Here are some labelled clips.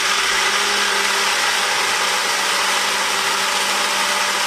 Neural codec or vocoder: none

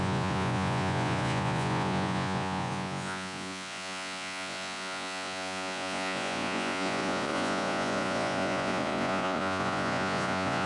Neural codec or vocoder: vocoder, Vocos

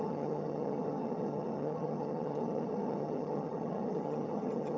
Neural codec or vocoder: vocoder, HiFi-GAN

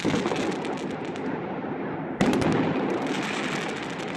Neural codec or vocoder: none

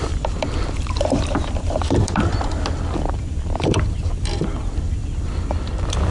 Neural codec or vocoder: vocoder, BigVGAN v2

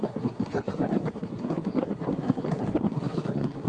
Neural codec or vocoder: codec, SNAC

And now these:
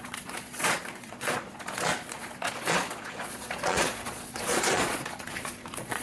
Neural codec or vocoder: vocoder, Vocos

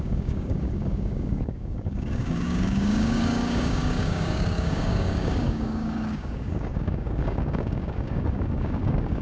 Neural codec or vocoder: codec, DAC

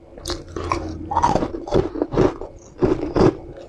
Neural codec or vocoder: none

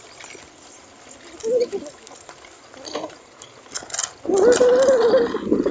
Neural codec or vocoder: none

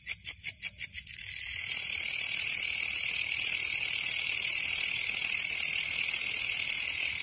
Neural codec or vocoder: none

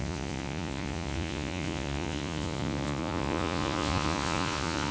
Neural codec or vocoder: vocoder, Vocos